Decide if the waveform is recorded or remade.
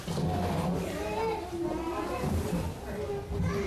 recorded